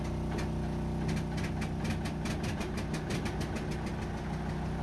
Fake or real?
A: real